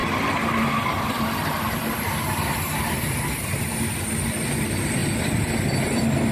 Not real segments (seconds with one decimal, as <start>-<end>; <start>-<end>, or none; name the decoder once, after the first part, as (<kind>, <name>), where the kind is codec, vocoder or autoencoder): none